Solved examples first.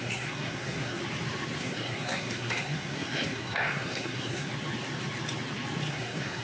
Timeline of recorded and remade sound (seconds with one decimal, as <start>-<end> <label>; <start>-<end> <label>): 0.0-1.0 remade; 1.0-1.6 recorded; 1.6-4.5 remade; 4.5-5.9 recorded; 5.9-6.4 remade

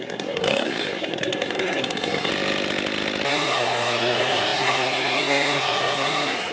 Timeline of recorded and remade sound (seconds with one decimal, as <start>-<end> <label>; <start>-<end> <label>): 0.0-2.3 remade; 2.3-3.3 recorded; 3.3-6.5 remade

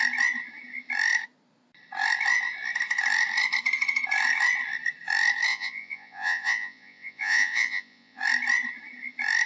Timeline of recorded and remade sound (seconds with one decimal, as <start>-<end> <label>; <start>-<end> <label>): 0.0-5.5 recorded; 5.5-8.2 remade; 8.2-9.5 recorded

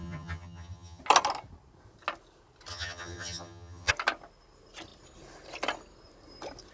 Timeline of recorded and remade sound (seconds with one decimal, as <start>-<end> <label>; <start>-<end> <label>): 0.0-1.0 remade; 1.0-2.7 recorded; 2.7-3.9 remade; 3.9-6.7 recorded

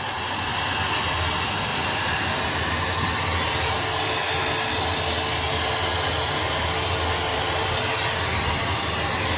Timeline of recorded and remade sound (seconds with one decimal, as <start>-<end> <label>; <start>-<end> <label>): 0.0-1.7 recorded; 1.7-2.9 remade; 2.9-9.4 recorded